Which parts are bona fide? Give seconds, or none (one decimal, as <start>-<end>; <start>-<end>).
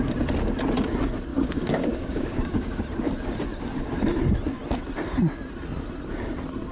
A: 0.0-1.3; 2.8-6.7